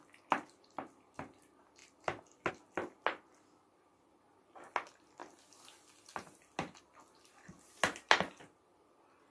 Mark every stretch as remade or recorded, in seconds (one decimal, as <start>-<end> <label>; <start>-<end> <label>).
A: 0.0-9.3 recorded